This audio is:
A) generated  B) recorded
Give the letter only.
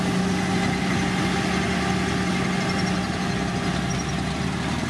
B